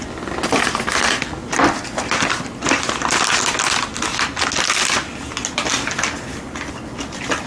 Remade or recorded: recorded